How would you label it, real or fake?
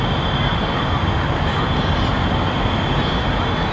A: real